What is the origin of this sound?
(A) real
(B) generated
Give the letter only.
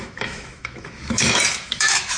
B